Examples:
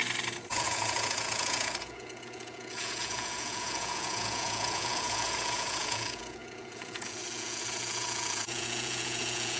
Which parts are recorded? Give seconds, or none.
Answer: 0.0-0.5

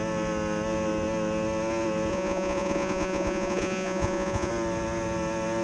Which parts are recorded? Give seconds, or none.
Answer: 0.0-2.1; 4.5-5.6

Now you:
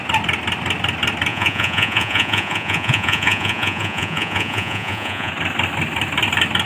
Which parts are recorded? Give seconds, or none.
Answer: 0.0-1.3; 5.3-6.7

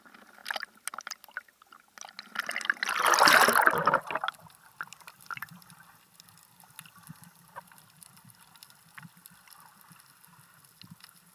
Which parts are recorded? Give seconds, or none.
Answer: 0.0-11.3